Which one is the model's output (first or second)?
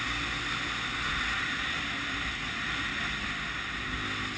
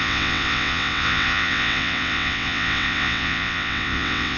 second